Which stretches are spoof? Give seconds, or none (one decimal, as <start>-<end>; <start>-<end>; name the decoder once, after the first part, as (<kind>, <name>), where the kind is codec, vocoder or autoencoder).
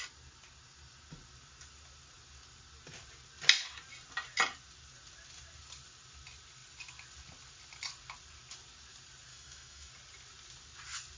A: 9.3-9.9 (autoencoder, DAC-VAE)